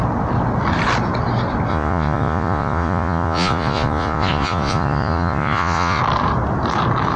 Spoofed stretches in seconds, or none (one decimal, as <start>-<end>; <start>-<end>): 1.7-6.0